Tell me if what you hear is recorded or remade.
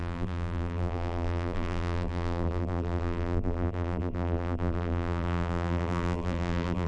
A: remade